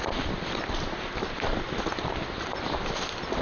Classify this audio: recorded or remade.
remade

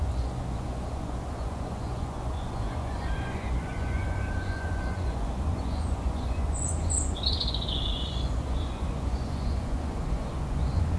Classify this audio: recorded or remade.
remade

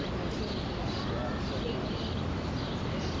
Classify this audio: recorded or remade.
recorded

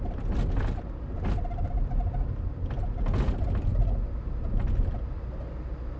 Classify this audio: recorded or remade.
recorded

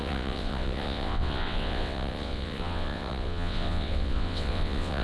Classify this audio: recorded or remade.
remade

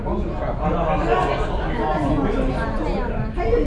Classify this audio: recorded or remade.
recorded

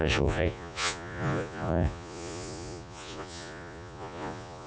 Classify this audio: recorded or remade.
remade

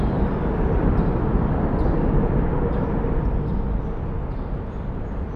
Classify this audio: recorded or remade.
recorded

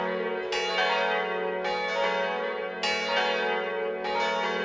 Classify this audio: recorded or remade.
recorded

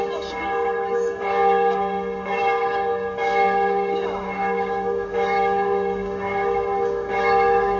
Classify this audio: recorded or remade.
remade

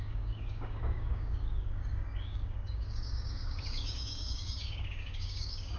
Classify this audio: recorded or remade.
remade